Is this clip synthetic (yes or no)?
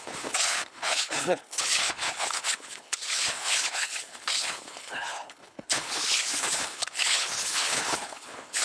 yes